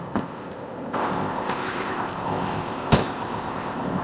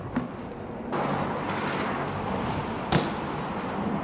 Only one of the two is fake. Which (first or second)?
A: first